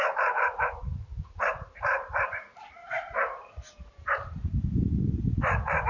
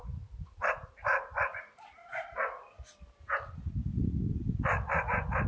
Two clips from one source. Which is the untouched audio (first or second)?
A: second